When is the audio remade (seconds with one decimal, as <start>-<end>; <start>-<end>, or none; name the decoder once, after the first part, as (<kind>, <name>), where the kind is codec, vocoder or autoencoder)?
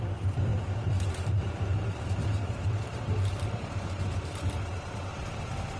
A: 0.5-4.0 (vocoder, BigVGAN v2)